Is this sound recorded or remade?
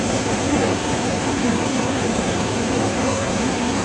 remade